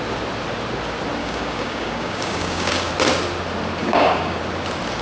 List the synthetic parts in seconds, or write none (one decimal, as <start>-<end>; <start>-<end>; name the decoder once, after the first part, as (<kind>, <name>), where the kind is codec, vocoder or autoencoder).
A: 1.2-2.9 (codec, DAC); 3.8-4.4